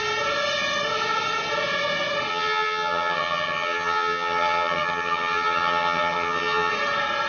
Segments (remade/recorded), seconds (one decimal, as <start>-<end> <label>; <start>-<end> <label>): 0.0-2.3 recorded; 2.3-6.7 remade; 6.7-7.3 recorded